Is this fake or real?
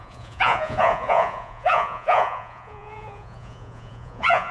fake